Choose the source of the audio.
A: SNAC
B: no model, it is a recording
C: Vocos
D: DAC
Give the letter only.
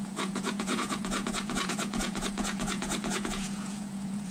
C